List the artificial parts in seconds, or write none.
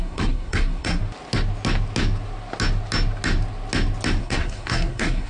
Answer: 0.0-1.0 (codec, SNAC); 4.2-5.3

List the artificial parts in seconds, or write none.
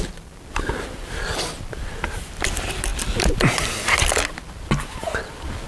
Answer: none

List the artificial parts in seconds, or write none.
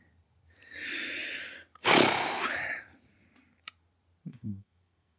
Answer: 4.3-5.2 (codec, SNAC)